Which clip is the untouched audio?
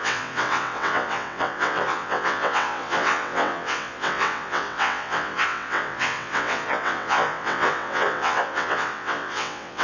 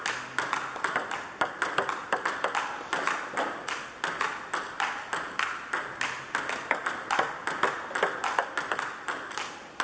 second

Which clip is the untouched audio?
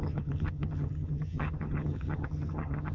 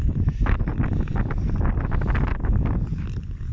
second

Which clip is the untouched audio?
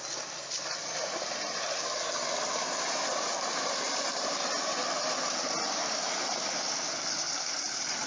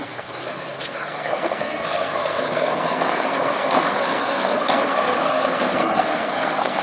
first